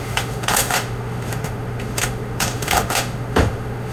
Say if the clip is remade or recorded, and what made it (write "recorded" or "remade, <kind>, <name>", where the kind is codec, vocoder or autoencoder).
remade, autoencoder, DAC-VAE